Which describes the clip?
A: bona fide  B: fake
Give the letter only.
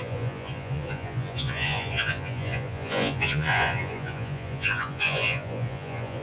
B